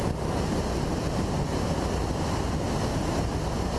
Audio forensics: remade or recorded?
recorded